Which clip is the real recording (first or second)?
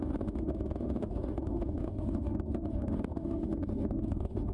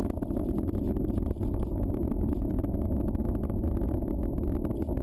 second